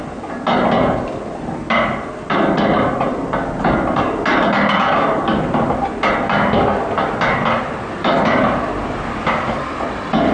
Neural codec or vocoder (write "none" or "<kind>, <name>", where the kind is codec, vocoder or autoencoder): none